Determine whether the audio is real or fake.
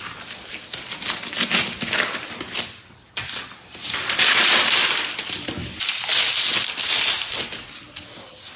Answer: real